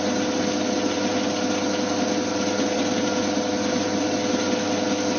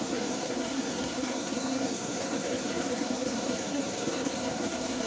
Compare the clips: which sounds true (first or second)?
first